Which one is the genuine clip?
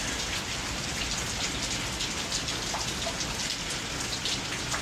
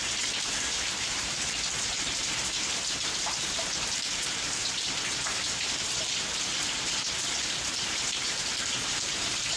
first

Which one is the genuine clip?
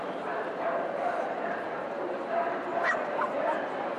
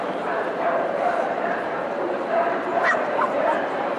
first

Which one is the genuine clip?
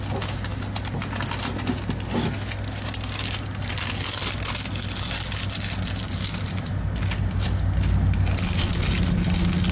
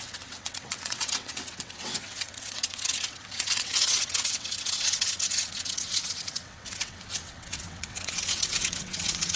first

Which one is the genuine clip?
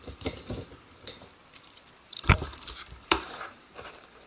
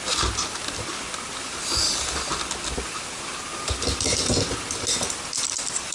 second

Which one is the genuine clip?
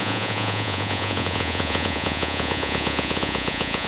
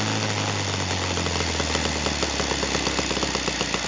second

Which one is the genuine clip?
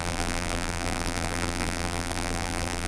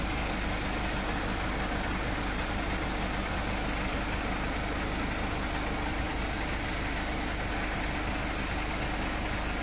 second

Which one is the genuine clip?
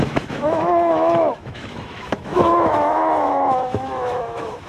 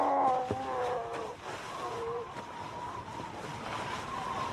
second